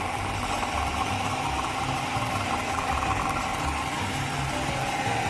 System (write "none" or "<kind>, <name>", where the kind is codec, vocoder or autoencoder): none